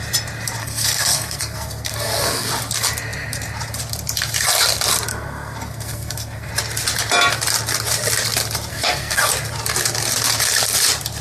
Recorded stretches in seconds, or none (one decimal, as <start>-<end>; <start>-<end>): 0.0-0.6; 2.5-5.1; 6.5-8.7; 9.3-11.2